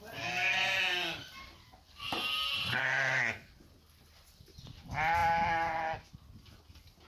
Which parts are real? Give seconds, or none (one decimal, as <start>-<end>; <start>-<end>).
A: 0.0-2.8; 3.5-7.1